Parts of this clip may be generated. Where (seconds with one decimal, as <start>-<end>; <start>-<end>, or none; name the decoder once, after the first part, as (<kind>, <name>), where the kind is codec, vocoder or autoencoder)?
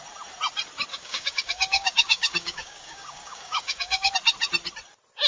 0.9-4.1 (codec, DAC)